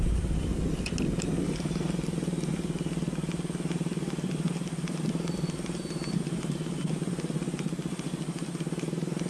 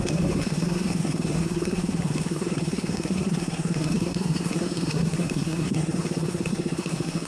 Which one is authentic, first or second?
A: first